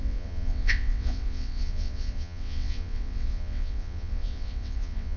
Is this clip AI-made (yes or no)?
yes